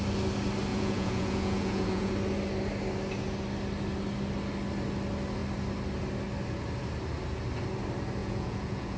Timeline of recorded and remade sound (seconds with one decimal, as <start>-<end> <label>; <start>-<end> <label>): 0.0-0.7 recorded; 0.7-2.1 remade; 2.1-8.2 recorded; 8.2-9.0 remade